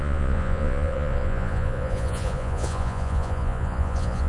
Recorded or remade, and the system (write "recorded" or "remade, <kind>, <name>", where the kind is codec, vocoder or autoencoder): remade, vocoder, Vocos